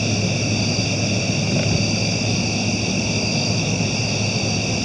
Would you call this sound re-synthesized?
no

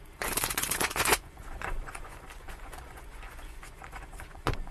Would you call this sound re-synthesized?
yes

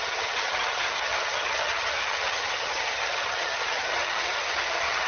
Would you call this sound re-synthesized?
yes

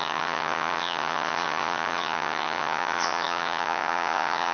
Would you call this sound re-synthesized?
yes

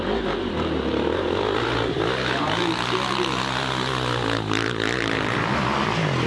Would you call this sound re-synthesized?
no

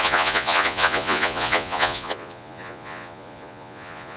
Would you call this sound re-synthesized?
yes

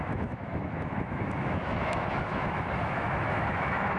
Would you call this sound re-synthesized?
yes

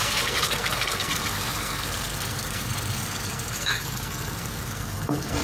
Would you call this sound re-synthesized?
yes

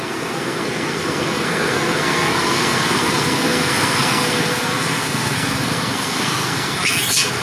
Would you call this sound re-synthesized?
yes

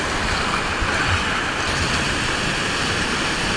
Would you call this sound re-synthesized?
no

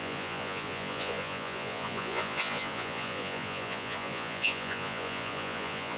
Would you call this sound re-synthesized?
yes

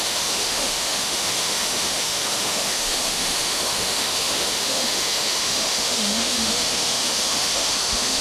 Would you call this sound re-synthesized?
yes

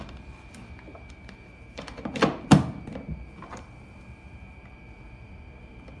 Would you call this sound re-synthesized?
yes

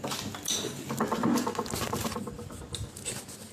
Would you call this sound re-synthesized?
no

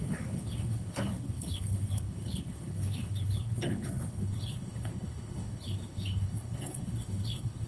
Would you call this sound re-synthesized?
yes